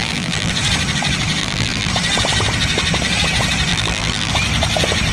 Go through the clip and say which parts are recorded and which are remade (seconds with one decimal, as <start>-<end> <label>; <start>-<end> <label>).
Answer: 0.0-0.5 remade; 0.5-1.4 recorded; 1.4-1.9 remade; 1.9-3.7 recorded; 3.7-4.3 remade; 4.3-5.1 recorded